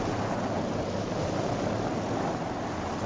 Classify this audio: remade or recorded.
recorded